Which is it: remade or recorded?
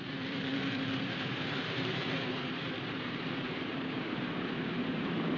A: remade